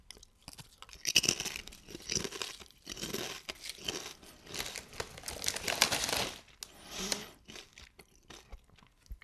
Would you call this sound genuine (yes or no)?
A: yes